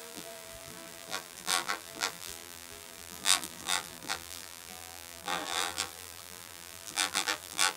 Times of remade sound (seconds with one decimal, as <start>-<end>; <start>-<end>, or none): 0.0-7.8